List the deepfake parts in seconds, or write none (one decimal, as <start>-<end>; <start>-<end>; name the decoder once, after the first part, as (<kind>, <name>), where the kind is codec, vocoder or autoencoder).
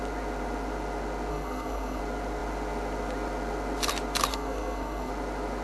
1.3-2.0 (codec, SNAC); 4.3-5.1